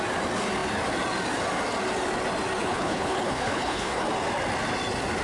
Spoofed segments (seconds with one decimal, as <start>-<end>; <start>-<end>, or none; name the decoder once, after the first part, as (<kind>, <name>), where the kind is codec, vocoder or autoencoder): 2.6-4.0 (codec, HILCodec)